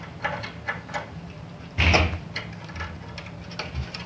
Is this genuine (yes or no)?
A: yes